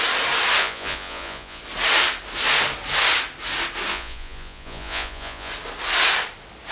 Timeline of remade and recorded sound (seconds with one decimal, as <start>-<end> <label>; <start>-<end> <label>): 0.0-0.6 recorded; 0.6-1.6 remade; 1.6-3.9 recorded; 3.9-5.5 remade; 5.5-6.7 recorded